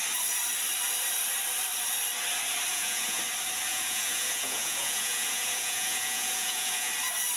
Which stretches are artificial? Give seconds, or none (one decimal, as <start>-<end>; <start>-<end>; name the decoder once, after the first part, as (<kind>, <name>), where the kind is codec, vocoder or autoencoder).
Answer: 2.7-3.2 (vocoder, Vocos); 3.7-6.9